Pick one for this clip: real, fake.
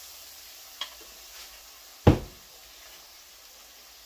real